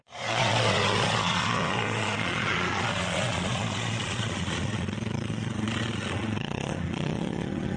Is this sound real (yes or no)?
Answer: no